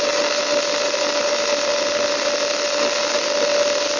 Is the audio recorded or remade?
recorded